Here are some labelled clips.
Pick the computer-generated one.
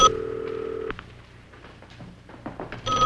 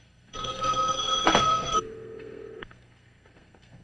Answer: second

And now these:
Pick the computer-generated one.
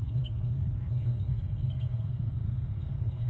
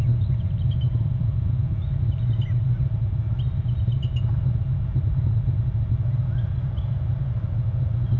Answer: first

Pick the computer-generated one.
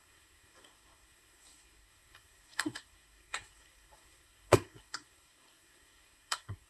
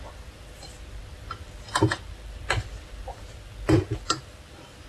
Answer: first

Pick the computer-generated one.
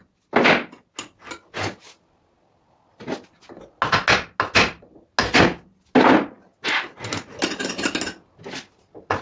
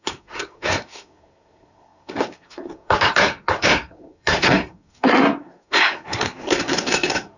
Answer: second